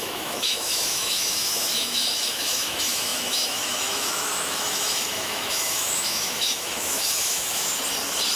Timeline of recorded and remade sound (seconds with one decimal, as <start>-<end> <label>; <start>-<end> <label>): 0.0-7.7 remade; 7.7-8.4 recorded